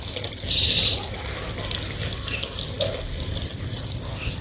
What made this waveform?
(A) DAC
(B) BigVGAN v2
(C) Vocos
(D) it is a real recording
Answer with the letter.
D